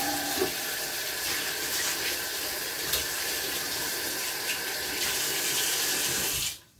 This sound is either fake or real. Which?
fake